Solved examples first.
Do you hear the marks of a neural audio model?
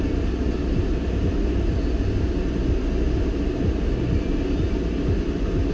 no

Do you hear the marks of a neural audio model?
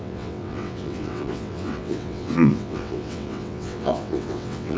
yes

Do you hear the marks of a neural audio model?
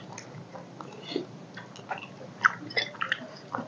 no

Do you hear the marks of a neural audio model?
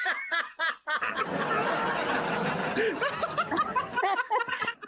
no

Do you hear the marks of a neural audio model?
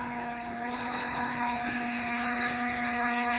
yes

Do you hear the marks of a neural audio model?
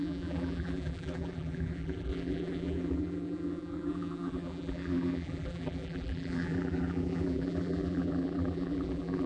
yes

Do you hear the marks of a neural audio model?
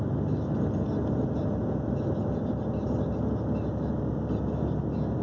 no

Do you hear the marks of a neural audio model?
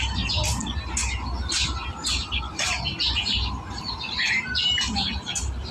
no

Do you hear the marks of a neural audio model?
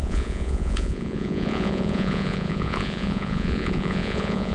yes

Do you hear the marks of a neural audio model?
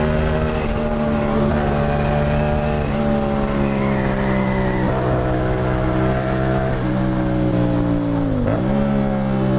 no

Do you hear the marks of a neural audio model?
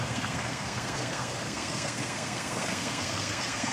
yes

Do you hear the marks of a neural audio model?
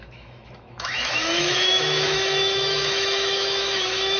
yes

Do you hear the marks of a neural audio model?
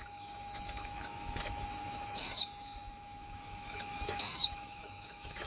yes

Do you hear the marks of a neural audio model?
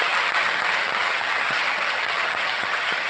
yes